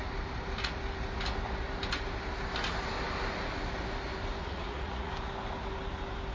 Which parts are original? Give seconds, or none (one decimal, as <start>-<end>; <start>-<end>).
0.0-4.4; 5.1-6.3